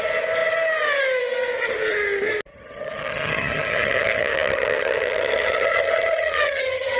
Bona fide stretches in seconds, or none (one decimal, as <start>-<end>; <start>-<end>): 0.0-2.5